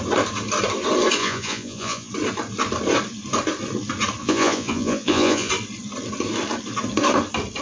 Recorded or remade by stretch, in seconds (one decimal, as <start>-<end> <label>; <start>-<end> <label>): 0.0-1.2 recorded; 1.2-2.1 remade; 2.1-4.2 recorded; 4.2-5.5 remade; 5.5-7.6 recorded